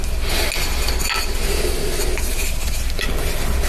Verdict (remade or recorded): recorded